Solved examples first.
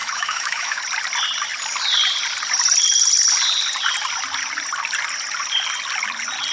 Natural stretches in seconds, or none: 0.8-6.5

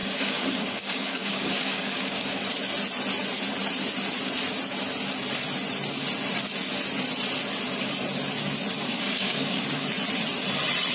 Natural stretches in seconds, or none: 2.4-8.9; 9.6-10.9